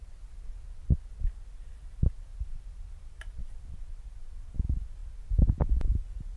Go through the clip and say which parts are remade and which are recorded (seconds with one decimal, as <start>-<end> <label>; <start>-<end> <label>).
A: 0.0-2.3 recorded; 2.3-2.8 remade; 2.8-3.4 recorded; 3.4-4.4 remade; 4.4-6.4 recorded